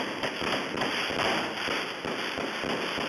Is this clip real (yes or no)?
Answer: yes